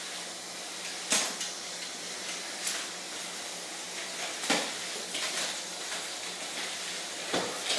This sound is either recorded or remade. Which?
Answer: recorded